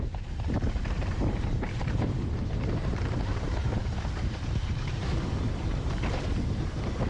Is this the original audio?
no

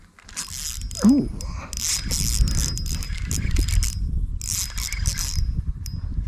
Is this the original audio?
yes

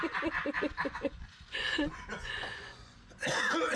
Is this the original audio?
no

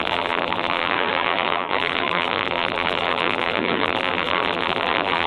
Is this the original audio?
no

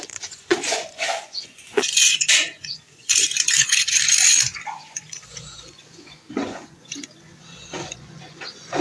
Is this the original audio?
no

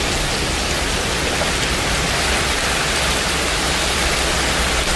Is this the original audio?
yes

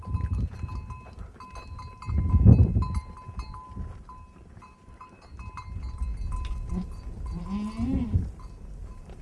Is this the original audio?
yes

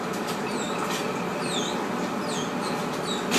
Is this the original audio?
yes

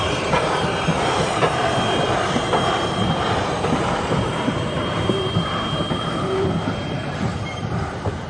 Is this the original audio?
no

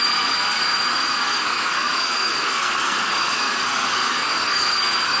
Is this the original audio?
no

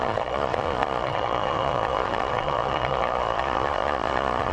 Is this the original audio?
no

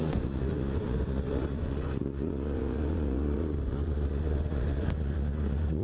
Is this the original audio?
no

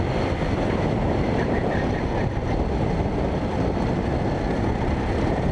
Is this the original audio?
yes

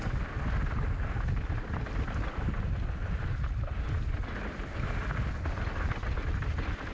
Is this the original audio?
yes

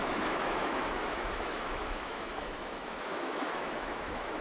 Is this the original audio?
no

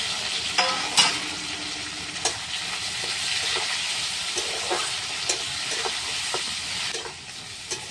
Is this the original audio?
yes